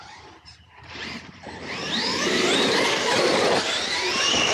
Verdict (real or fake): fake